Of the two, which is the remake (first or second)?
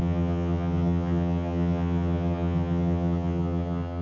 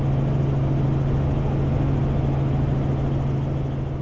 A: first